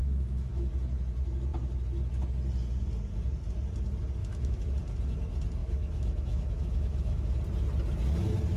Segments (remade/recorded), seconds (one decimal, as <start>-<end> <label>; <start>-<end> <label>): 0.0-0.7 remade; 0.7-4.2 recorded; 4.2-4.7 remade; 4.7-5.6 recorded; 5.6-7.3 remade; 7.3-8.6 recorded